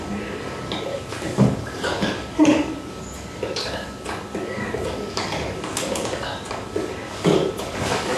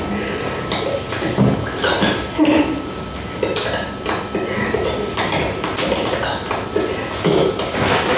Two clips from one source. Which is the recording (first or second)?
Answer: second